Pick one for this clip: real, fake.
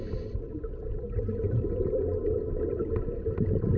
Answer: real